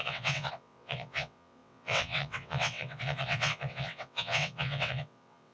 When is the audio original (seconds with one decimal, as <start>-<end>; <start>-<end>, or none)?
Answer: none